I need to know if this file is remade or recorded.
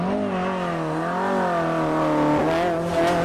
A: recorded